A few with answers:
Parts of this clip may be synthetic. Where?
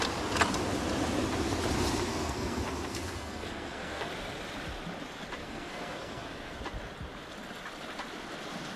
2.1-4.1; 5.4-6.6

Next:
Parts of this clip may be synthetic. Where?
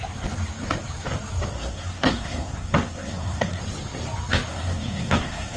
1.5-3.6; 4.5-5.6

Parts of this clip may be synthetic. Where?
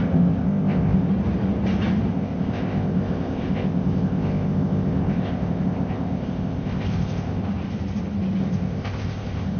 0.0-1.1; 2.1-7.4; 8.4-9.6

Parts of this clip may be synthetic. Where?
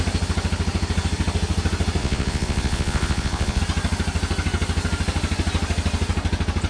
2.0-3.6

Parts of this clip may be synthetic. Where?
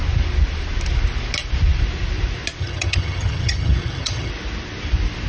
2.6-4.3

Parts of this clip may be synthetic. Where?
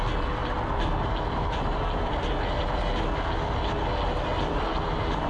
none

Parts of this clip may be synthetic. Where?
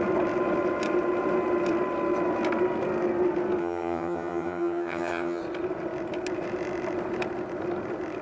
3.6-5.4